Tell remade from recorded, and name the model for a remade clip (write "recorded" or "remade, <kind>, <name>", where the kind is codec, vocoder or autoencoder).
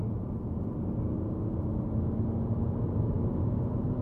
recorded